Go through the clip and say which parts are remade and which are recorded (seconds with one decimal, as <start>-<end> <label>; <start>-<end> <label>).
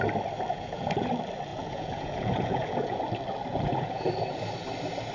0.0-0.5 recorded; 0.5-1.1 remade; 1.1-1.5 recorded; 1.5-3.0 remade; 3.0-3.5 recorded; 3.5-4.1 remade; 4.1-5.1 recorded